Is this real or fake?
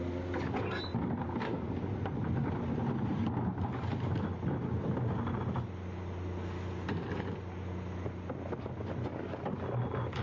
real